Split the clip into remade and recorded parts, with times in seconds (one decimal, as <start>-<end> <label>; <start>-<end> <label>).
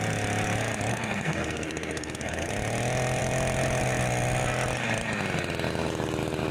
0.0-0.9 recorded; 0.9-2.5 remade; 2.5-6.5 recorded